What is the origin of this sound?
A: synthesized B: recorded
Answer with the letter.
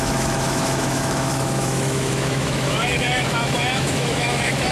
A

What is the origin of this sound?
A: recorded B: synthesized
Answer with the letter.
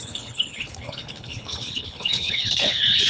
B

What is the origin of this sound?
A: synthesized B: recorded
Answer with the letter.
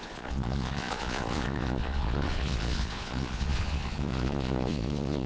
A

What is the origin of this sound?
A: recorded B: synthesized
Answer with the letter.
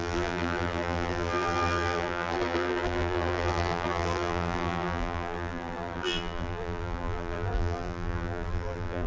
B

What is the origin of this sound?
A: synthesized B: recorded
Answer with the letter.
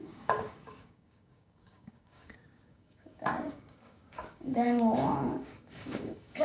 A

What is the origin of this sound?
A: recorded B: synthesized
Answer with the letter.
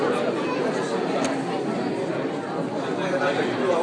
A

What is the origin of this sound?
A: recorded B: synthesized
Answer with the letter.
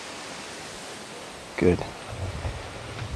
A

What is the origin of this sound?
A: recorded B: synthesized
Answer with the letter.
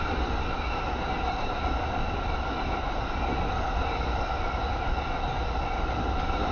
A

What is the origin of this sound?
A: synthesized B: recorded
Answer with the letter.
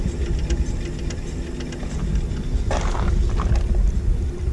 B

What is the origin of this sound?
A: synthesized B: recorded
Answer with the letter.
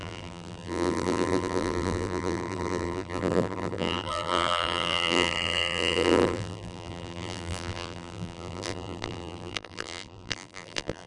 A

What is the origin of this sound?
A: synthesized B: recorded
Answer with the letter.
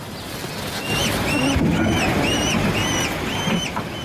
B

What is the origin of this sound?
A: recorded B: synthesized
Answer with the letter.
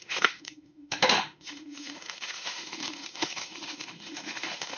B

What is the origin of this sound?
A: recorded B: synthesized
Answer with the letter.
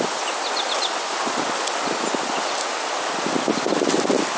A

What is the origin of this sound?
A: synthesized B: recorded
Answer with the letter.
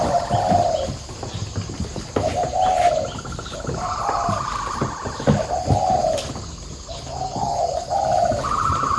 B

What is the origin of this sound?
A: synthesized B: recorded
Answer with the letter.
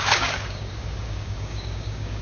A